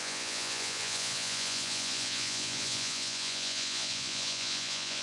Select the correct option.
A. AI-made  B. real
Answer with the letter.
A